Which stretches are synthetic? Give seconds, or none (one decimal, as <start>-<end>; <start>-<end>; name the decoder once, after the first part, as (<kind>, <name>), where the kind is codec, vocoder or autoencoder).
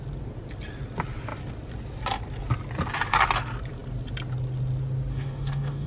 5.1-5.9 (codec, DAC)